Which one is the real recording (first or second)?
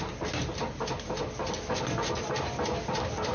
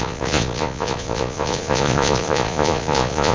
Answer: first